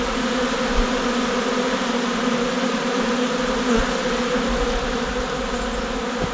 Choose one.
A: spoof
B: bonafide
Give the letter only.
B